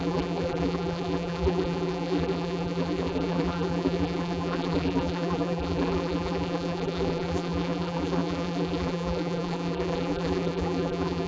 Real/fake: fake